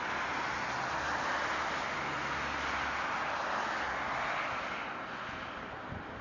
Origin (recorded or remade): recorded